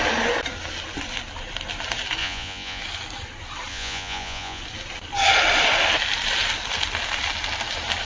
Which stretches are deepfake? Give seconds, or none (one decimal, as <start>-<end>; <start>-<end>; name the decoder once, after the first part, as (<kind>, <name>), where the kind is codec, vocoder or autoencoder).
2.2-2.8 (vocoder, Vocos); 3.7-4.6